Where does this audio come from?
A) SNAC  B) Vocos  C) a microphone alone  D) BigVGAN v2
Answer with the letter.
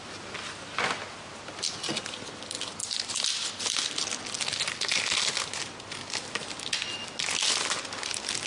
C